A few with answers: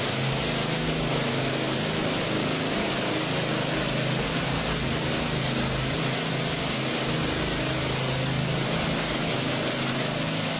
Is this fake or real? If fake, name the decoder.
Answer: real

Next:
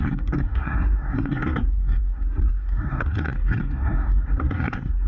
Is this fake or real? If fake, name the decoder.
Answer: fake, codec, SNAC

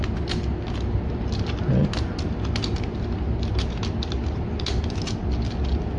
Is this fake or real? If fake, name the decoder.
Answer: real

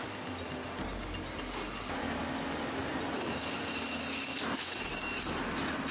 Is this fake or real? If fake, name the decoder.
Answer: real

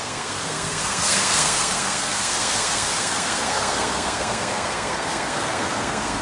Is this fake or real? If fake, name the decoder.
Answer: fake, codec, SNAC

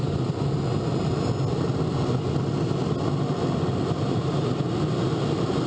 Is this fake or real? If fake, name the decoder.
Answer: real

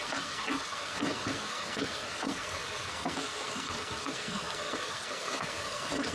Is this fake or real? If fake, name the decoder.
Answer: fake, codec, SNAC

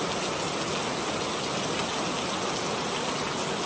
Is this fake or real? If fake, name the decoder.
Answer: real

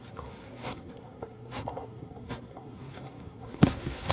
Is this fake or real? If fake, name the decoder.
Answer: fake, codec, SNAC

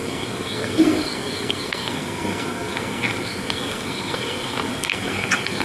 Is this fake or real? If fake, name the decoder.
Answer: fake, codec, SNAC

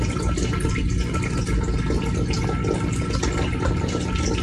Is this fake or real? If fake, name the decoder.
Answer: real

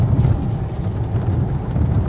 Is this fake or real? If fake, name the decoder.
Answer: real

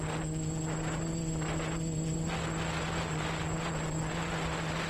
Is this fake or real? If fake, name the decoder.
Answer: real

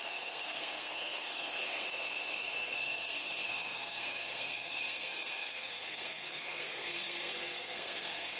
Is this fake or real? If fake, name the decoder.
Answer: fake, codec, SNAC